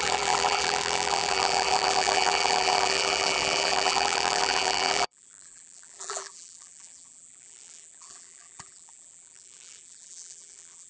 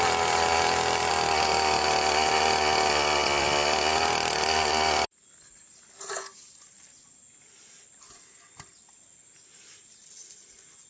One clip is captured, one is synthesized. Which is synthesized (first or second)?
first